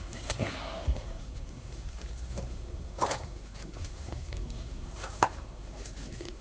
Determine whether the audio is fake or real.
fake